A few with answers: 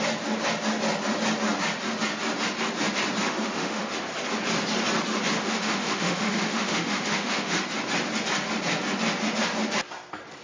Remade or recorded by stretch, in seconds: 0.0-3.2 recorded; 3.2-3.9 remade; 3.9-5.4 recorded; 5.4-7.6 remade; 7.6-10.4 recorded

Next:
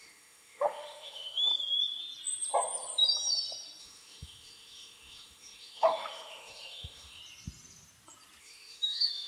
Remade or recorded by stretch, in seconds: 0.0-1.5 remade; 1.5-3.8 recorded; 3.8-7.2 remade; 7.2-8.4 recorded; 8.4-9.3 remade

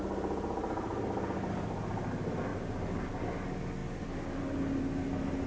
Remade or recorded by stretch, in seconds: 0.0-5.5 recorded

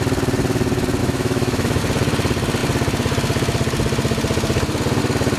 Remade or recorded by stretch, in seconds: 0.0-1.0 recorded; 1.0-1.8 remade; 1.8-5.4 recorded

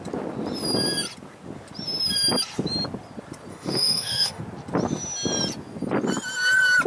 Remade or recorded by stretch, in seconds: 0.0-3.5 recorded; 3.5-4.4 remade; 4.4-6.9 recorded

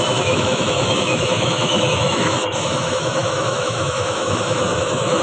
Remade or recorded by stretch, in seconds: 0.0-5.2 remade

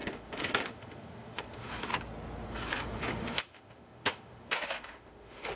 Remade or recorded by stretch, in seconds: 0.0-1.9 remade; 1.9-2.5 recorded; 2.5-5.6 remade